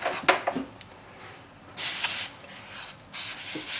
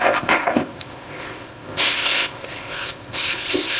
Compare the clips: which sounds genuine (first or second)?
first